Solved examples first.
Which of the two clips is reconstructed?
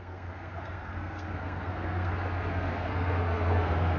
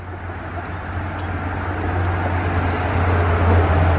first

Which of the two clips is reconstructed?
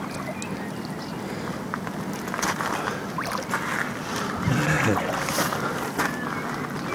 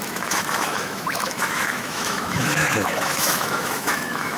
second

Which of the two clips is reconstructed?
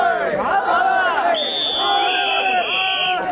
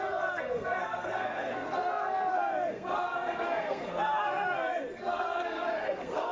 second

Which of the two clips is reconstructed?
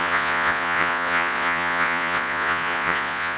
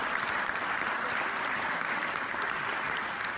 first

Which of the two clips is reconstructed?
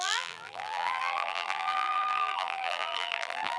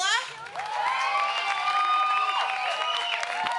first